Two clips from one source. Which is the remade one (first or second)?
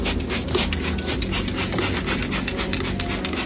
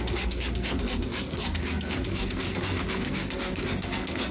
second